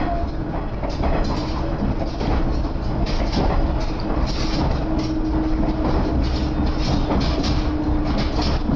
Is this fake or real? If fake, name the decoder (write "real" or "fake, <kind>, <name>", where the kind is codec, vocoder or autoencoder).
real